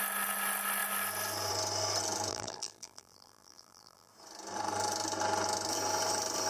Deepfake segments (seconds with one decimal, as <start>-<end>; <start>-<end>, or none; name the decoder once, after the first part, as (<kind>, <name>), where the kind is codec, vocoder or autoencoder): 2.3-4.1 (vocoder, BigVGAN v2)